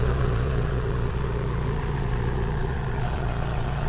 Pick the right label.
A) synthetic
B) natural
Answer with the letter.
A